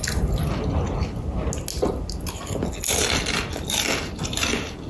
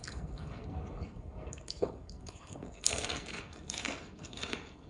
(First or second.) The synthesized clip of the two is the second